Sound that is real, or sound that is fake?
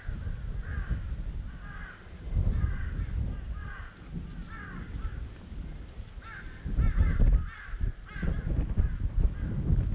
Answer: real